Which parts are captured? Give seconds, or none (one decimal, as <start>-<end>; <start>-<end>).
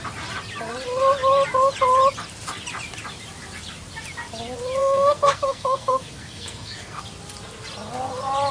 0.0-4.8; 7.0-8.5